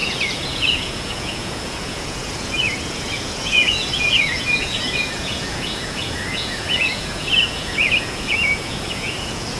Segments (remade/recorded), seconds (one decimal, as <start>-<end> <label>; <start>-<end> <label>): 0.0-9.6 remade